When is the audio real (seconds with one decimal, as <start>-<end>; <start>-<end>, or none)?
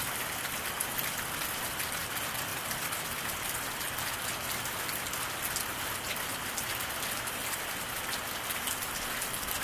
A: 0.0-9.6